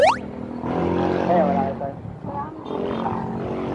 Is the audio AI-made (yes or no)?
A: no